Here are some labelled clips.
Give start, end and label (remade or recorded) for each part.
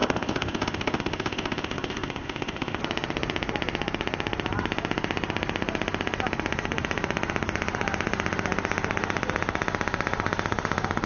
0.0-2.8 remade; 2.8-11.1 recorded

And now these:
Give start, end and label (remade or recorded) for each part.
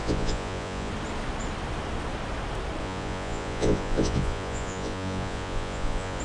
0.0-0.9 remade; 0.9-2.8 recorded; 2.8-6.2 remade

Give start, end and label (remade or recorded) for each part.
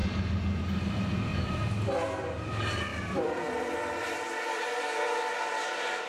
0.0-2.9 recorded; 2.9-6.1 remade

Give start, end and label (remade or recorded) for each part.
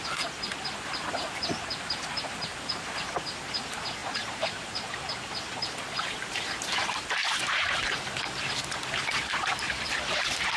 0.0-4.0 recorded; 4.0-5.6 remade; 5.6-7.2 recorded; 7.2-7.9 remade; 7.9-10.6 recorded